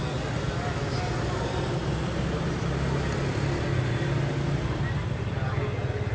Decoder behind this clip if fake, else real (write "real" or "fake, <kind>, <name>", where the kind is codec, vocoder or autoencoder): real